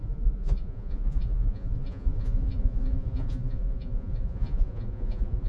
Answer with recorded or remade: remade